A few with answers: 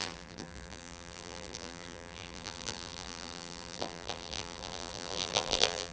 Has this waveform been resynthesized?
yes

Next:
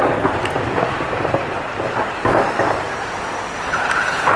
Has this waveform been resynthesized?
no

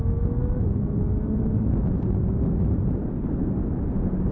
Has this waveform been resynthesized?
no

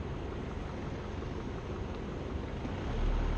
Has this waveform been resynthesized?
no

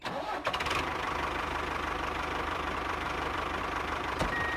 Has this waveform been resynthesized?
yes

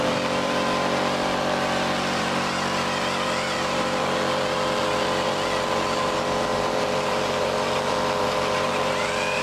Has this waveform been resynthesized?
yes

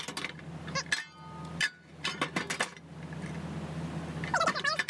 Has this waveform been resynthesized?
no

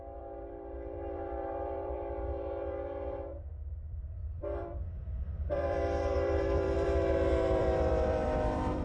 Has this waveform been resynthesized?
yes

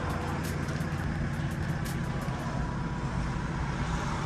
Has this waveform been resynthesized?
no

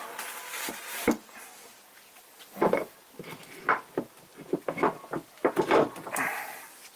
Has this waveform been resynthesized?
no